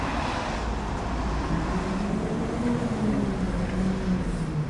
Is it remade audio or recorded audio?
recorded